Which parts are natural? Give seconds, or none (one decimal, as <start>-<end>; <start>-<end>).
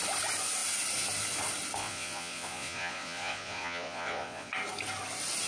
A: 0.0-1.8; 4.5-5.5